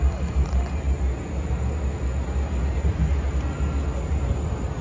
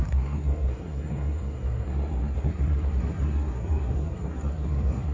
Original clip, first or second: first